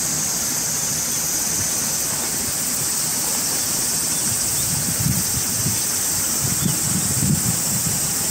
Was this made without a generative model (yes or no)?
yes